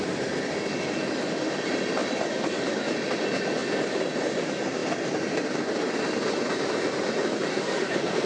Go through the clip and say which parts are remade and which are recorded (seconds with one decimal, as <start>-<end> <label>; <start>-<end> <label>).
0.0-7.5 recorded; 7.5-8.3 remade